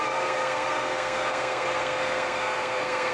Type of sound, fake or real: fake